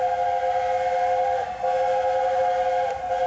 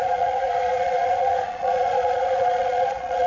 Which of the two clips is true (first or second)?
first